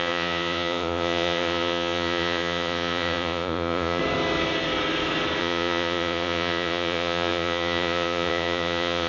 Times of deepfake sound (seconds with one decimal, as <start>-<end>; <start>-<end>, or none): 0.0-4.0; 5.4-9.1